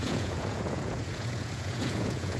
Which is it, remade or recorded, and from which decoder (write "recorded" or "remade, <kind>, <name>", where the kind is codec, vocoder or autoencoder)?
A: remade, vocoder, Vocos